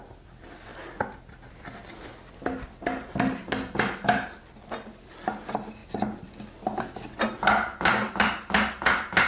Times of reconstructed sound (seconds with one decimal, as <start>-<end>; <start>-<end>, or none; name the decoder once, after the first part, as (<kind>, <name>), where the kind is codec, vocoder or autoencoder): none